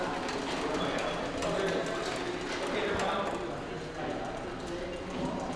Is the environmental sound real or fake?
real